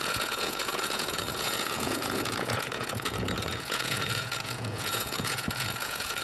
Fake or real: fake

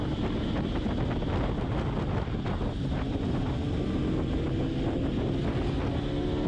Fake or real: real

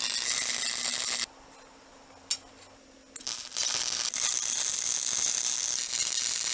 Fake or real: real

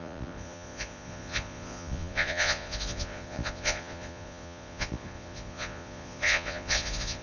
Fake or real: fake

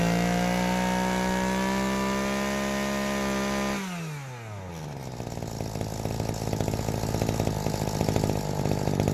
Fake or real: real